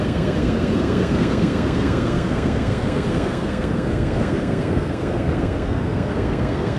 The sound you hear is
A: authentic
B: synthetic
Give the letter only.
B